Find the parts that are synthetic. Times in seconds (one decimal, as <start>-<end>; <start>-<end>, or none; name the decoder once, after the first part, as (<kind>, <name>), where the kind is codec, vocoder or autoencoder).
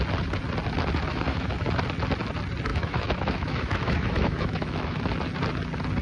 1.1-1.6 (autoencoder, DAC-VAE); 2.7-5.0